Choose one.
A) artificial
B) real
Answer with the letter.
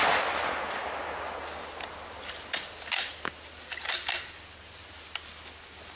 B